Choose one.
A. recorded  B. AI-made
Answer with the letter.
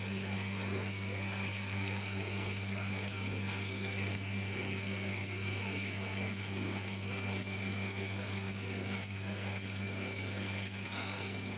B